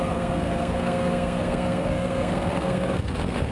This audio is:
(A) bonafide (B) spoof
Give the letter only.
B